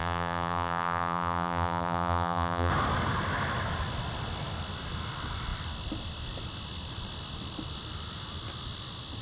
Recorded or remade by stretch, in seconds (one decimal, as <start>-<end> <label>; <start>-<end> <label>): 0.0-2.7 remade; 2.7-9.2 recorded